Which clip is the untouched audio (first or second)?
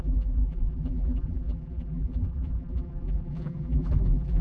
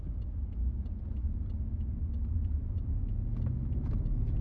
second